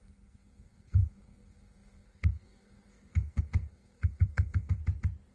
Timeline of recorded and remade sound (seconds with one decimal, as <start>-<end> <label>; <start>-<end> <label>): 0.0-4.8 remade; 4.8-5.3 recorded